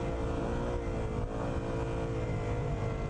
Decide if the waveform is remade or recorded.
recorded